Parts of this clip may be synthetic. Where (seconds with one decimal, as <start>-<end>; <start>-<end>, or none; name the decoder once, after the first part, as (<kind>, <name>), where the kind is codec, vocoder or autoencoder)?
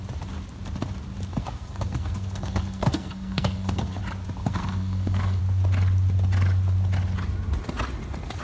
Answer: 1.3-4.0 (codec, SNAC); 4.4-5.4